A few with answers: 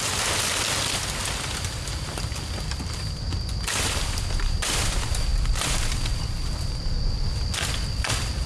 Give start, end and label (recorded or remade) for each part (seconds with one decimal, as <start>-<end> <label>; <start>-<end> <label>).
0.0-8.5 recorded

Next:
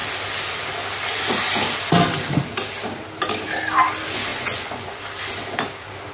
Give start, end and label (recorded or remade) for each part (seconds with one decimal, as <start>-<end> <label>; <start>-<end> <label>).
0.0-4.3 recorded; 4.3-5.0 remade; 5.0-6.1 recorded

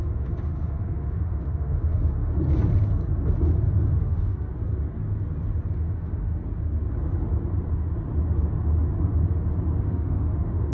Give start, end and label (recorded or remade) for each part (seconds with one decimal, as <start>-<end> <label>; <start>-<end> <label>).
0.0-2.3 remade; 2.3-4.0 recorded; 4.0-4.5 remade; 4.5-5.7 recorded; 5.7-6.4 remade; 6.4-9.8 recorded; 9.8-10.7 remade

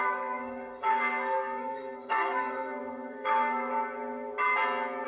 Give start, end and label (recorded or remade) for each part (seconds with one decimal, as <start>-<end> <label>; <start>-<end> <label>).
0.0-3.7 remade; 3.7-5.1 recorded